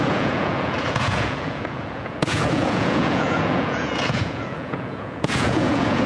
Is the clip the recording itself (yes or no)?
no